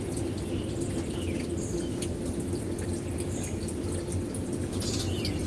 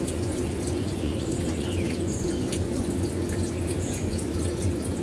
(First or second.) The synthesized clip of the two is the second